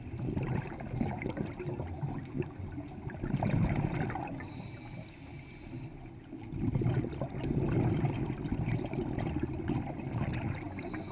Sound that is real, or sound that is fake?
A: real